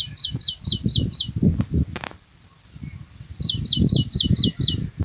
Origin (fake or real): real